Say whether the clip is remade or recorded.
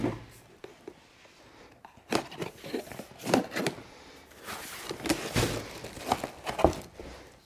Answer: recorded